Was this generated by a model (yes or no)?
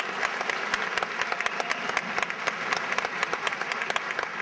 no